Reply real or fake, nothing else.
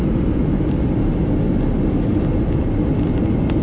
real